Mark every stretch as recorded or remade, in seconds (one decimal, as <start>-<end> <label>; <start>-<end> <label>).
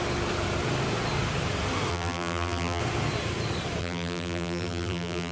0.0-1.9 recorded; 1.9-2.8 remade; 2.8-3.8 recorded; 3.8-5.3 remade